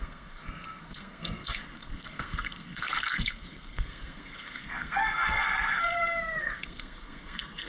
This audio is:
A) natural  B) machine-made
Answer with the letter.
B